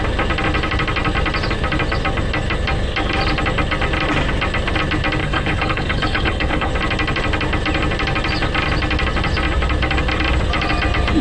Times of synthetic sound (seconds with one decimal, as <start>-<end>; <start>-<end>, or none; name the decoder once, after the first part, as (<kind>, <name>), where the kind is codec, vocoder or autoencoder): 5.2-6.7 (codec, HILCodec)